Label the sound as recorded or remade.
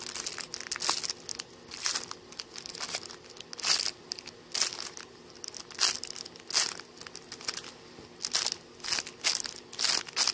recorded